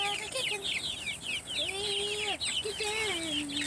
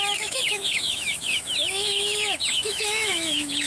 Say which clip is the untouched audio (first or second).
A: first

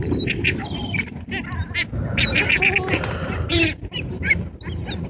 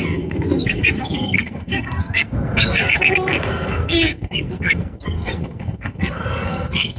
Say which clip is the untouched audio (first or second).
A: first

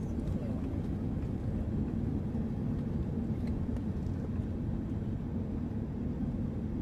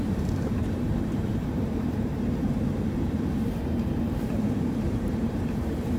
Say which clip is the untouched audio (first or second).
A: first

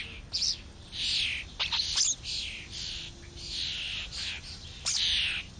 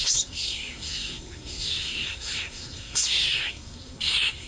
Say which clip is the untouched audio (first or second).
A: first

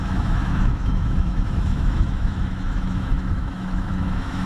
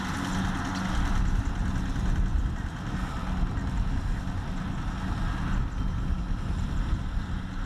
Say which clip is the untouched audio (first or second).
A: second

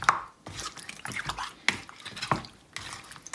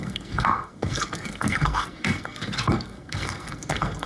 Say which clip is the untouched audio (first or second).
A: first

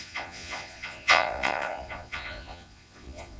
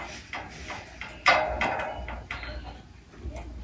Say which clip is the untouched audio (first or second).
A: second